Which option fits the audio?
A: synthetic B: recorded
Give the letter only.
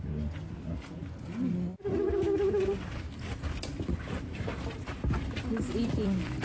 A